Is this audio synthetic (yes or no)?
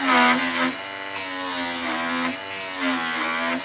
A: no